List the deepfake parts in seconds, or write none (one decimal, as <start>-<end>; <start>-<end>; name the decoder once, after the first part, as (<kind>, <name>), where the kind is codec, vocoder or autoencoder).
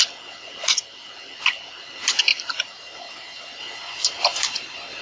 2.3-3.6 (vocoder, BigVGAN v2); 4.3-5.0